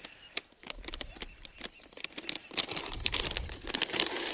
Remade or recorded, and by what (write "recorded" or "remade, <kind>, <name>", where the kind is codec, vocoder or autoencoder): recorded